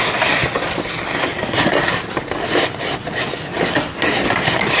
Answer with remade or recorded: recorded